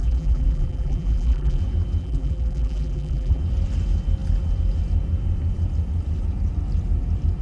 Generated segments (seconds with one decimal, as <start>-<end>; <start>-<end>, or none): 0.0-1.6; 2.0-3.4